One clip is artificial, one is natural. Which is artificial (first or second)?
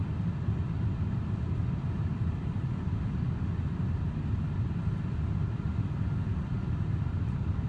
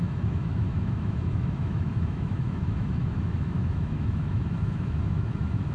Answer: second